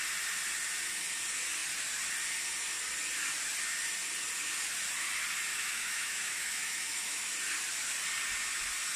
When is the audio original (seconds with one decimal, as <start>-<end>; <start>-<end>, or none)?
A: 0.0-5.5; 7.3-9.0